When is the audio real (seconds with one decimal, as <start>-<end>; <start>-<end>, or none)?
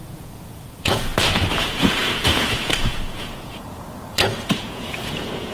1.1-1.6